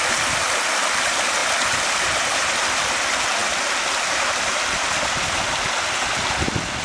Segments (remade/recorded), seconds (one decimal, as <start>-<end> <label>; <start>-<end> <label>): 0.0-1.4 recorded; 1.4-2.6 remade; 2.6-3.4 recorded; 3.4-4.5 remade; 4.5-6.8 recorded